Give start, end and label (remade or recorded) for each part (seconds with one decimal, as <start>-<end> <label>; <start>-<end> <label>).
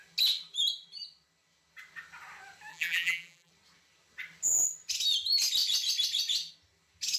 0.0-2.7 recorded; 2.7-3.5 remade; 3.5-7.2 recorded